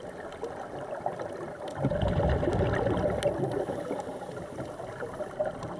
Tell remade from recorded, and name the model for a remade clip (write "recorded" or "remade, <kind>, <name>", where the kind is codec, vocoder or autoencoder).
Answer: recorded